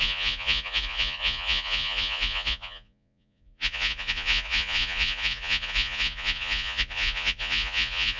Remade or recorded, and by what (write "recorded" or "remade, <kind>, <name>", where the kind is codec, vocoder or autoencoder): remade, vocoder, Vocos